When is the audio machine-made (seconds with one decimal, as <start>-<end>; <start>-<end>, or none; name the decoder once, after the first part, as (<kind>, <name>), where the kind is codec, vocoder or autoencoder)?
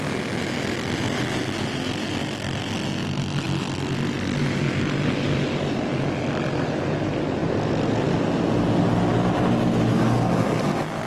none